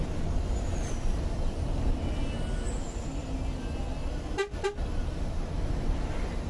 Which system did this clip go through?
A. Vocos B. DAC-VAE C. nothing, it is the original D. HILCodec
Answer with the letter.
C